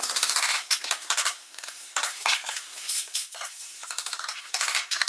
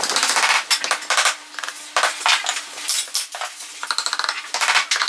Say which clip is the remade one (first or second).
first